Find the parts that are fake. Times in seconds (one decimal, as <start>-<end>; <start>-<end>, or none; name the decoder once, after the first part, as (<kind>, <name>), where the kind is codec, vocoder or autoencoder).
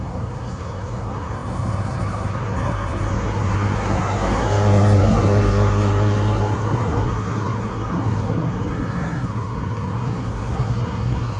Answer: 0.0-11.4 (codec, SNAC)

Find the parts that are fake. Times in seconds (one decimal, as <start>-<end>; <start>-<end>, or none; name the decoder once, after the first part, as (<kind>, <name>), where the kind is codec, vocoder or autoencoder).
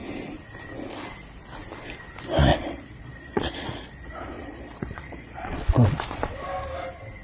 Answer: 2.5-6.3 (vocoder, Vocos)